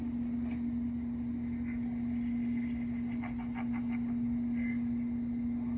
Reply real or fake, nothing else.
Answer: real